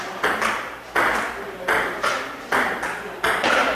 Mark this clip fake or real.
real